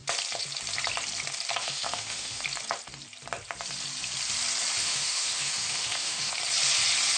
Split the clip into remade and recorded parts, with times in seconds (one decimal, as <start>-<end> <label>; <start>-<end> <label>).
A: 0.0-1.6 recorded; 1.6-2.4 remade; 2.4-4.8 recorded; 4.8-6.3 remade; 6.3-7.2 recorded